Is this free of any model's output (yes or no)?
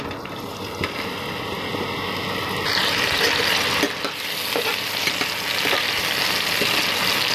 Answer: yes